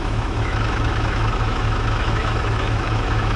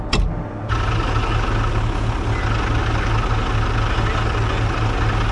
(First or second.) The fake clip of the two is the first